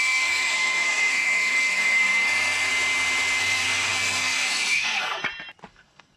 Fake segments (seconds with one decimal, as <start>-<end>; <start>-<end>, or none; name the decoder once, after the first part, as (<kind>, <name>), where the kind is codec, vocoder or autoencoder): 0.0-2.7 (codec, SNAC); 3.4-5.2; 5.7-6.2